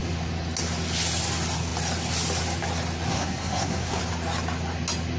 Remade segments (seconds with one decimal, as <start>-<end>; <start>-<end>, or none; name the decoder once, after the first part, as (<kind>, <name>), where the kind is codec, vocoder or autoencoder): 3.1-4.0 (codec, SNAC)